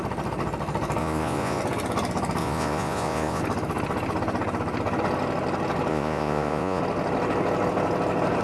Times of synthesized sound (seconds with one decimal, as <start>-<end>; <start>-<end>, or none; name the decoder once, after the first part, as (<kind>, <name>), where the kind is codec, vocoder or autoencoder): 1.0-1.6 (vocoder, Vocos); 2.4-3.4; 5.9-6.8